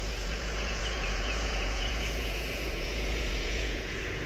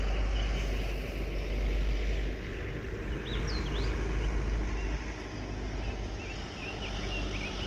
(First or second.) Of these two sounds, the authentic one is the second